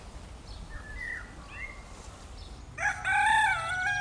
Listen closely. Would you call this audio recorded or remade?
recorded